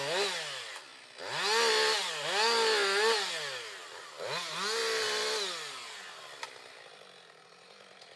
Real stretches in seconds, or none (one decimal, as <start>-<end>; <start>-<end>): 0.0-8.2